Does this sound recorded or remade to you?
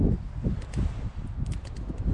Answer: recorded